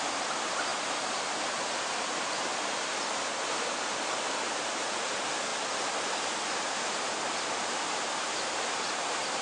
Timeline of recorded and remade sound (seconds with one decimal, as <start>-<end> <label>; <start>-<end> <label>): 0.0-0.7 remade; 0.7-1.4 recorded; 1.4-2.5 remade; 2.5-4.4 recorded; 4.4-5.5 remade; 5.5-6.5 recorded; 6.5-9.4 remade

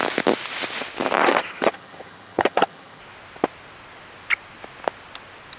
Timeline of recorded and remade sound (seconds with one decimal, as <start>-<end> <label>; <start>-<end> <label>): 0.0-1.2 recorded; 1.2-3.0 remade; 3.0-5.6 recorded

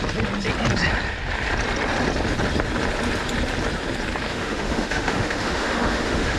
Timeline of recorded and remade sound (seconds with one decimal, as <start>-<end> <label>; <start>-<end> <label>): 0.0-4.3 recorded; 4.3-6.4 remade

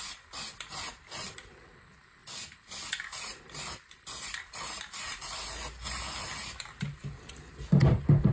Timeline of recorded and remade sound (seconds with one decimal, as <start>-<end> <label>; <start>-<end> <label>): 0.0-8.3 recorded

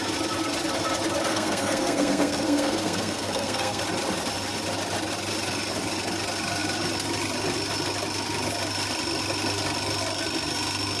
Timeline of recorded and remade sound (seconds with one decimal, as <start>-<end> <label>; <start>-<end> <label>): 0.0-1.3 recorded; 1.3-3.8 remade; 3.8-11.0 recorded

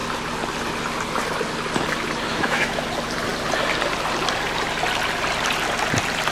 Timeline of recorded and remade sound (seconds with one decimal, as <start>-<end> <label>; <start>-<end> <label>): 0.0-2.3 recorded; 2.3-2.8 remade; 2.8-6.3 recorded